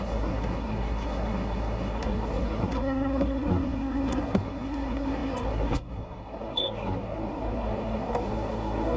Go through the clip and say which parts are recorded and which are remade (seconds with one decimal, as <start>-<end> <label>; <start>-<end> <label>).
0.0-9.0 remade